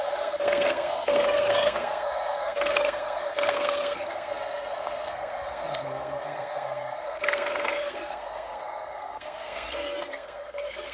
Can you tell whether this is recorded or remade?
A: remade